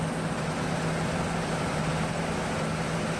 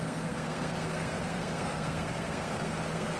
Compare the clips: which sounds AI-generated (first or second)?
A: second